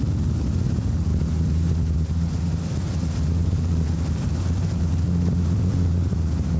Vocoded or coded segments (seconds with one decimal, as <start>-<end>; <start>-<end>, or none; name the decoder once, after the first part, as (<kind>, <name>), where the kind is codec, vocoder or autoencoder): 1.1-1.7 (vocoder, BigVGAN v2); 3.4-4.9